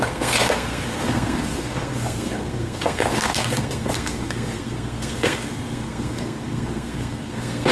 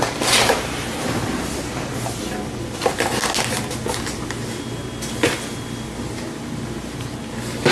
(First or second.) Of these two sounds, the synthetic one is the first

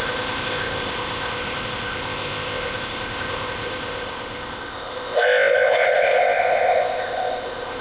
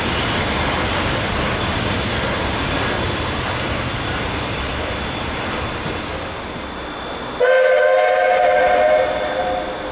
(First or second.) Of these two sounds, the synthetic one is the first